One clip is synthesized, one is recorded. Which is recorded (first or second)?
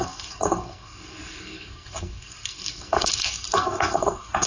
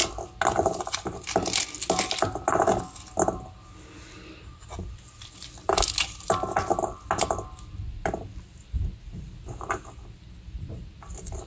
second